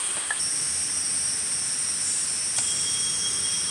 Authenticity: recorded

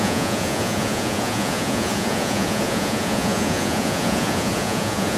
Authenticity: remade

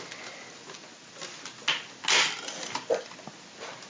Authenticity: recorded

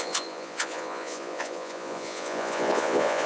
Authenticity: remade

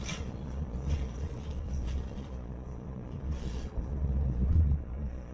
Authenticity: remade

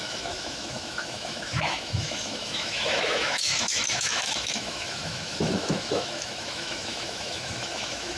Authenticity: remade